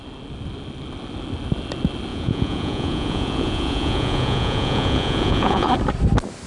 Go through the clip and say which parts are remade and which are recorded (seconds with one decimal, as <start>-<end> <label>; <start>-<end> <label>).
0.0-2.1 recorded; 2.1-5.7 remade; 5.7-6.5 recorded